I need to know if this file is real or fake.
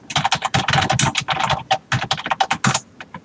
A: real